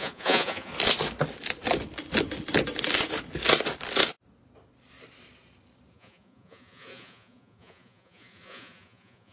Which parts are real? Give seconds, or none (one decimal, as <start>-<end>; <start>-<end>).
0.7-5.9